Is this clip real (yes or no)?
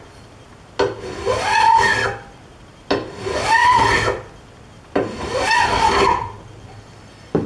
yes